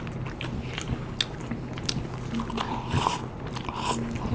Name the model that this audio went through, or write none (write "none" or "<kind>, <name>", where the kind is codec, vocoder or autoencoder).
none